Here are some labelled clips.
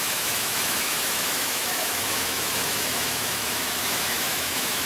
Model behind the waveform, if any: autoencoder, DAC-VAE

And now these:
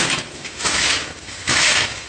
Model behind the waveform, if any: autoencoder, DAC-VAE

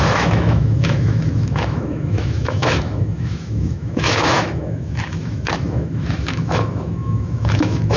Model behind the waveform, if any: autoencoder, DAC-VAE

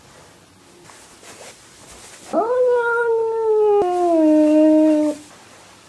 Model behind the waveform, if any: none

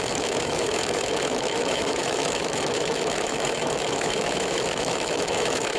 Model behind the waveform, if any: autoencoder, DAC-VAE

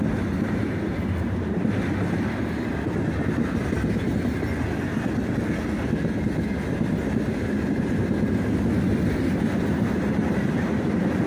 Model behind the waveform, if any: none